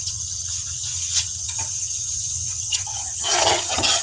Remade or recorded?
remade